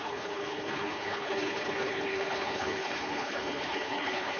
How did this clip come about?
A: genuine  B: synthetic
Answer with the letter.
B